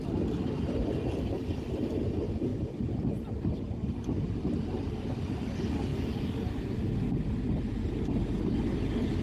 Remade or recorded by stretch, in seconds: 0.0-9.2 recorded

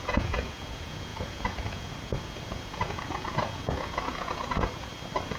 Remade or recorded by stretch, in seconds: 0.0-4.9 remade; 4.9-5.4 recorded

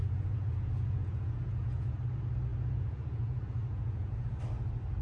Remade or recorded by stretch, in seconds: 0.0-2.0 remade; 2.0-2.5 recorded; 2.5-4.4 remade; 4.4-5.0 recorded